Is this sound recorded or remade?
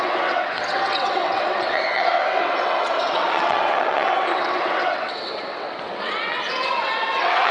remade